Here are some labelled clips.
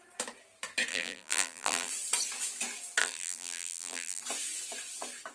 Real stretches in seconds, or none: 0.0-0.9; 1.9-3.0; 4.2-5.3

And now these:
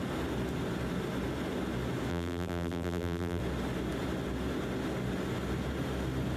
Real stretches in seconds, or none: 0.0-2.1; 3.4-6.4

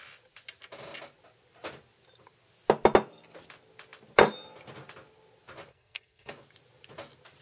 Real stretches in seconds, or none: 0.0-5.7; 6.3-7.4

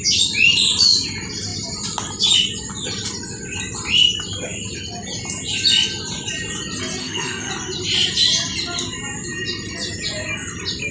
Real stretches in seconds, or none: 0.0-7.0; 7.5-10.9

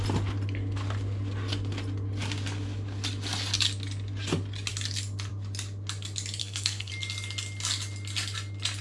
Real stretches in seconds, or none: 0.0-6.4; 6.9-8.8

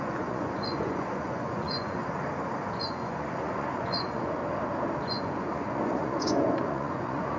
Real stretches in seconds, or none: 2.0-2.7; 4.4-5.0

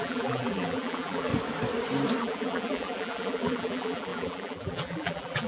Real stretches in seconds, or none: 1.3-2.2